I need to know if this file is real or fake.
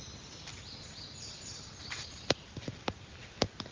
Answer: real